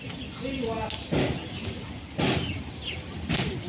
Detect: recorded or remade recorded